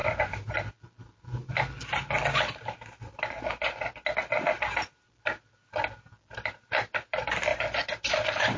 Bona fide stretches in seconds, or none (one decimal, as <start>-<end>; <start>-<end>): 1.4-5.8